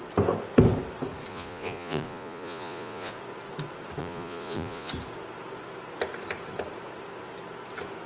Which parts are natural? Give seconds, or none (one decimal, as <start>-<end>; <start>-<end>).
0.0-1.3; 3.1-4.0; 4.9-8.1

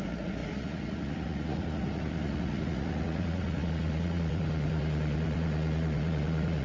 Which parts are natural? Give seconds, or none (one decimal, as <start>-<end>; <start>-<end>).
none

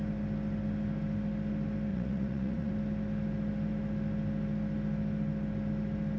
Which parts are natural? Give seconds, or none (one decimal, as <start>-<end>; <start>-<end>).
0.0-1.9; 2.7-6.2

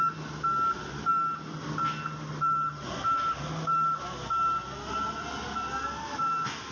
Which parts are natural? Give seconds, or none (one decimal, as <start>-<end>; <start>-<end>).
0.0-6.7

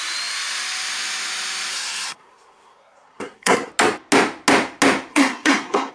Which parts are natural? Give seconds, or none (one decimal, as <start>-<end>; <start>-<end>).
0.0-1.7; 3.7-5.1

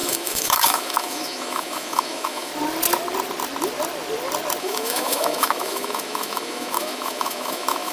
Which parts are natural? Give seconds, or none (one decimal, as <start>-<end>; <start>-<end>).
2.5-4.6